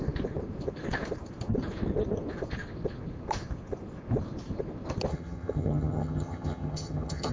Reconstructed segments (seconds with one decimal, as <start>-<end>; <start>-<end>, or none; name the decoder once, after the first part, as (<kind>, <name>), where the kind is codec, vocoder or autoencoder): 5.1-7.3 (vocoder, HiFi-GAN)